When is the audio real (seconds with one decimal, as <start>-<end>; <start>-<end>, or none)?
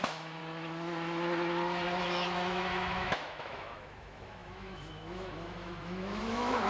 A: 0.4-2.0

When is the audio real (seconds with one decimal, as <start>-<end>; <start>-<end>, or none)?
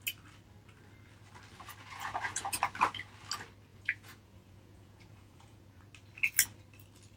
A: 0.0-1.8; 2.6-3.7; 5.8-7.2